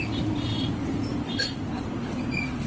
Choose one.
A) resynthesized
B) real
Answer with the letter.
B